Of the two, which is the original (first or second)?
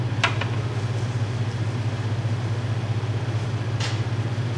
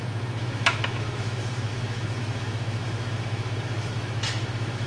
first